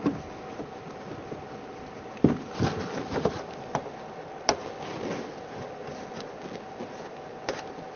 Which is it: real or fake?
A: real